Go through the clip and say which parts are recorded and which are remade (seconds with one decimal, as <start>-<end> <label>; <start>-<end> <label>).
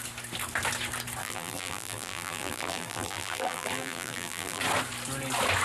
0.0-1.2 recorded; 1.2-4.6 remade; 4.6-5.6 recorded